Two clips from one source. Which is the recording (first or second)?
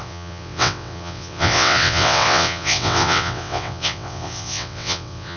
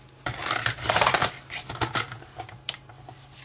second